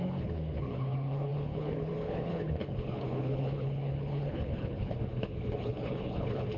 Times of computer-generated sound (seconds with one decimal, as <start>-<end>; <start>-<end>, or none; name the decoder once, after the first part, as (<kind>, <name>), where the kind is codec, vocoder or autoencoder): 0.0-6.6 (codec, HILCodec)